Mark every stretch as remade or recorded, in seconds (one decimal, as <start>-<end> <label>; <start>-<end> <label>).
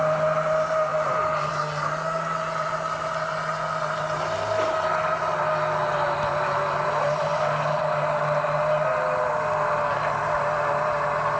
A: 0.0-11.4 recorded